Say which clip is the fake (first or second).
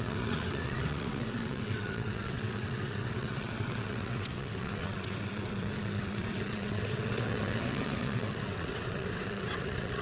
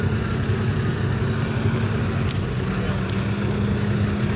first